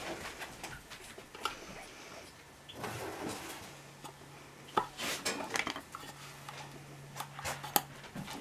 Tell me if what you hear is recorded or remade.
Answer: recorded